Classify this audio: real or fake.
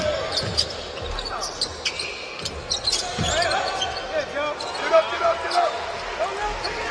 real